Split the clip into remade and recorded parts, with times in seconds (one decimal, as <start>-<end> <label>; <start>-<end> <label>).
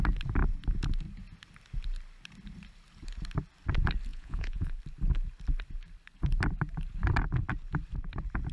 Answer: 0.0-4.1 recorded; 4.1-4.8 remade; 4.8-8.5 recorded